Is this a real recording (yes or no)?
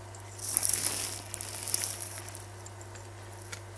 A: yes